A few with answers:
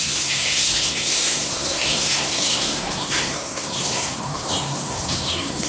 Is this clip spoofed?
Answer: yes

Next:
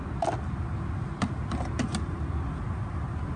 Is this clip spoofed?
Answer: no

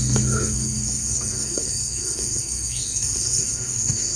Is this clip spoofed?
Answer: yes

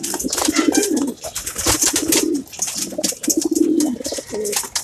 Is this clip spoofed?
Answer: no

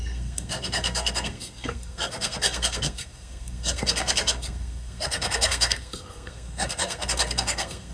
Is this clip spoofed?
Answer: yes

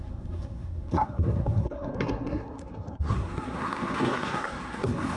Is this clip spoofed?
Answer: yes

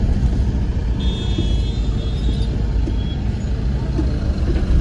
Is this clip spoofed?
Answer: no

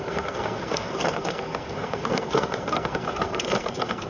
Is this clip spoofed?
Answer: yes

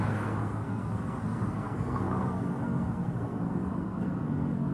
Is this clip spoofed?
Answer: yes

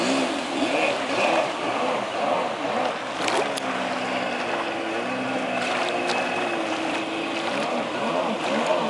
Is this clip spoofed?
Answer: no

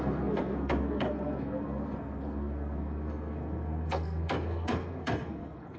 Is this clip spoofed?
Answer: yes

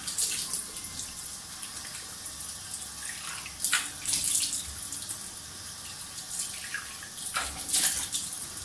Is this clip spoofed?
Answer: no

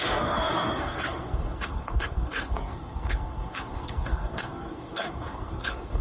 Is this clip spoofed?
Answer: yes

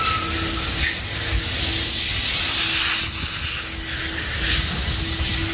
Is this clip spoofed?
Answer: no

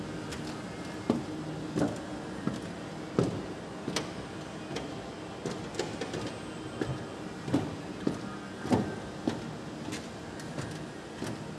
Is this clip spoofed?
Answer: no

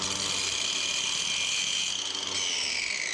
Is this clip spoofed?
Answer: no